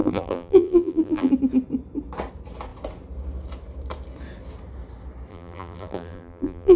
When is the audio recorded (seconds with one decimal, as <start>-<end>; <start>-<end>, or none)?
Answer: 1.3-5.3